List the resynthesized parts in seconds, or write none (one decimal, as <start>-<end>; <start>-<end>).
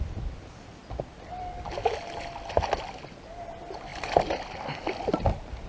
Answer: none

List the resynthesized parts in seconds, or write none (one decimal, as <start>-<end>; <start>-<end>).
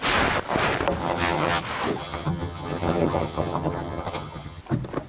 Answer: 1.0-1.6; 2.0-4.6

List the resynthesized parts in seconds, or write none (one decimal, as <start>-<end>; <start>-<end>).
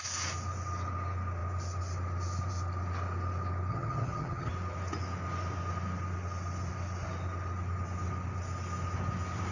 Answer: 3.7-4.5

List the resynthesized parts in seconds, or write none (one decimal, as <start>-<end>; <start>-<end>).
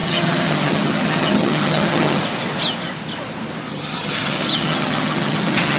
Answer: 0.0-2.2; 3.7-5.8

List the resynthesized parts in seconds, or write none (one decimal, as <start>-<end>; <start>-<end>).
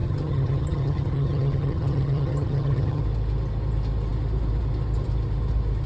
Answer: 0.0-3.0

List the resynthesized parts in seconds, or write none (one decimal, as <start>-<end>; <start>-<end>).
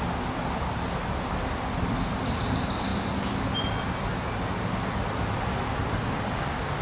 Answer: none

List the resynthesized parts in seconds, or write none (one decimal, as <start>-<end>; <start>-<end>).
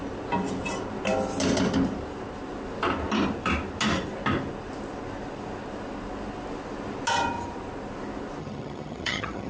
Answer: 8.4-9.5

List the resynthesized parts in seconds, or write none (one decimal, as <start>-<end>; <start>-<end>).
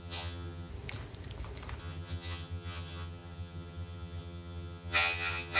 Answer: 0.0-0.7; 1.8-5.6